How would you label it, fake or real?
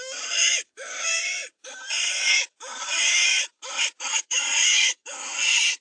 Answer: fake